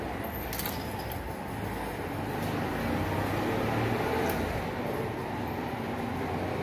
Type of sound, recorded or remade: recorded